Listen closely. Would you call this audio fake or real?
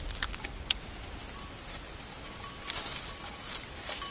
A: real